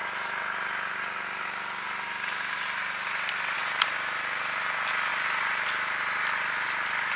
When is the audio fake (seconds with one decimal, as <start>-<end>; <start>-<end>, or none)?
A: none